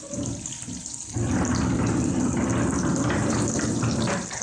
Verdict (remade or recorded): recorded